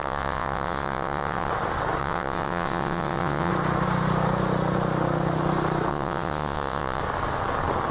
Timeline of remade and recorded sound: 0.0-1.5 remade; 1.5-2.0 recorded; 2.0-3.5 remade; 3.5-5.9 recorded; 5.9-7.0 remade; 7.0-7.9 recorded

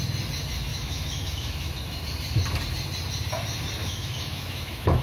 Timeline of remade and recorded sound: 0.0-0.7 recorded; 0.7-1.7 remade; 1.7-3.8 recorded; 3.8-5.0 remade

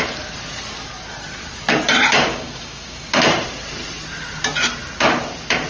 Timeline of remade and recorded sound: 0.0-2.3 recorded; 2.3-3.1 remade; 3.1-5.7 recorded